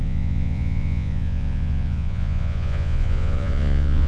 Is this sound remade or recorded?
remade